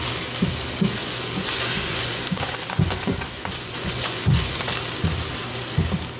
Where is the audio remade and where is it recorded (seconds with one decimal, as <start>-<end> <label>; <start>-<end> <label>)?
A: 0.0-1.0 recorded; 1.0-4.7 remade; 4.7-6.2 recorded